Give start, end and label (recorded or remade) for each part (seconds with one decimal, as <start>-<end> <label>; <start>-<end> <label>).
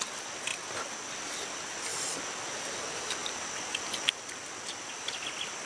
0.0-5.7 recorded